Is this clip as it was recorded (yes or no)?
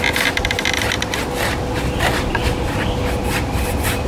yes